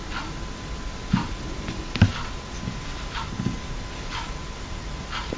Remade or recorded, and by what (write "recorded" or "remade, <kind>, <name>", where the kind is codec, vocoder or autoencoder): recorded